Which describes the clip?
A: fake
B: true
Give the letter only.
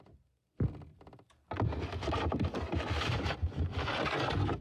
B